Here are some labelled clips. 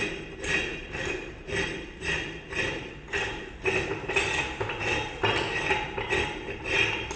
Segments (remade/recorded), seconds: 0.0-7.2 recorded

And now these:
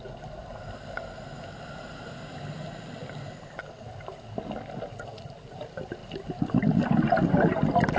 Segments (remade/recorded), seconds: 0.0-8.0 recorded